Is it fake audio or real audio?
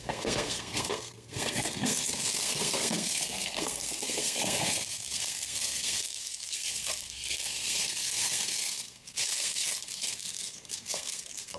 fake